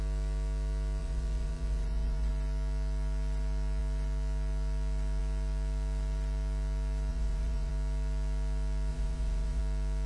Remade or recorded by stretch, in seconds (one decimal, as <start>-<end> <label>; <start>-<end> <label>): 0.0-1.0 recorded; 1.0-2.3 remade; 2.3-7.1 recorded; 7.1-7.7 remade; 7.7-8.9 recorded; 8.9-9.6 remade; 9.6-10.1 recorded